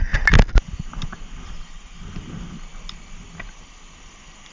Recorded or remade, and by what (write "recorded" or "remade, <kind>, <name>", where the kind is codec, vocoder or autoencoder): recorded